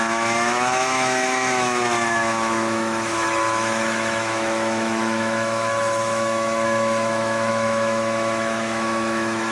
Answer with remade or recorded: remade